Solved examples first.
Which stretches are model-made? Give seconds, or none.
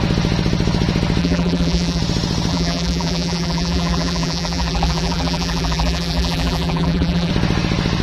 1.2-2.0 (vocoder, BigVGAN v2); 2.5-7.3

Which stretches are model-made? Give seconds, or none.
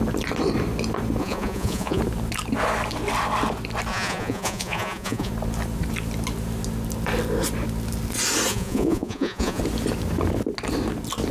1.2-2.0 (vocoder, Vocos); 3.9-5.3; 8.5-9.6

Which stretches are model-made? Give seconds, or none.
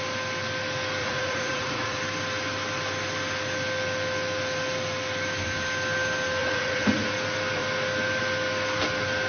1.0-2.0 (vocoder, Vocos); 6.4-7.1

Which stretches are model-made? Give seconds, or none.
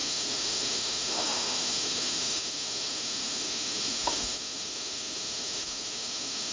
0.0-6.5 (autoencoder, DAC-VAE)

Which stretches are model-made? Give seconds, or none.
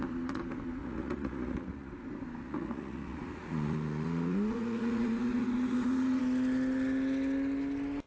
0.8-1.9 (vocoder, Vocos); 2.4-6.2